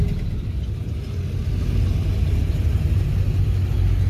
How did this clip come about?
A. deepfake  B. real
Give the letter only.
B